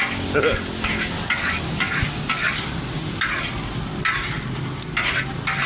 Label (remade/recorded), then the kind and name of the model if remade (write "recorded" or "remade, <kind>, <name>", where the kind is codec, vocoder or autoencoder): recorded